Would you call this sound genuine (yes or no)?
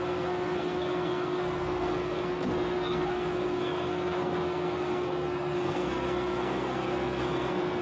no